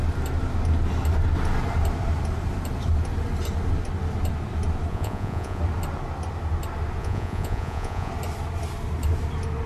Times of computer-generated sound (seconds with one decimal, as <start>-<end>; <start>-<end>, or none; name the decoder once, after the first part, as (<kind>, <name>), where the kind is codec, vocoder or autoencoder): 4.9-5.6 (vocoder, Vocos); 7.0-8.1